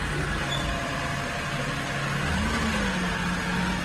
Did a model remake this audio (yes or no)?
no